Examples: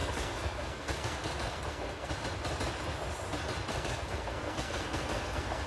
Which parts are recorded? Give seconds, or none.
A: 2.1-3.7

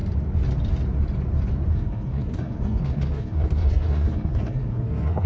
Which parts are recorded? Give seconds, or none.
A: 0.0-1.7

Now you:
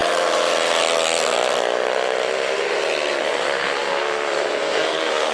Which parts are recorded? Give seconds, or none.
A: 0.0-3.2

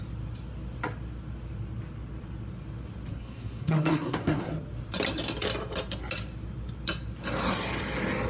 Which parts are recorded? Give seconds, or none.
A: 0.0-3.1; 4.5-8.3

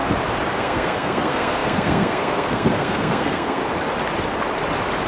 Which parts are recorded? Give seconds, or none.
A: 0.0-0.5; 3.6-5.1

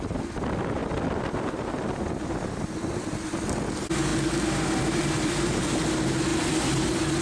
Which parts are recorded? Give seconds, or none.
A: 0.0-7.2